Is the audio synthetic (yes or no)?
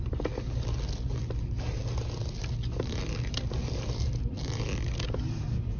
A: no